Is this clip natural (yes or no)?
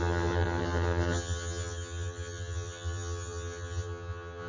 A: no